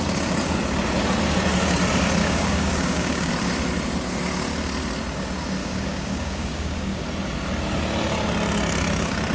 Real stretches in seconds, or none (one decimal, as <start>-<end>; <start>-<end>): 0.0-2.2; 3.3-5.6; 7.0-9.3